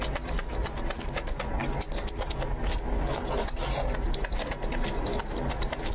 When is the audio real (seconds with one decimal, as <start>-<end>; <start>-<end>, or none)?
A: 0.0-5.9